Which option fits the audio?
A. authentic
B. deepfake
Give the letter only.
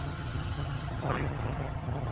B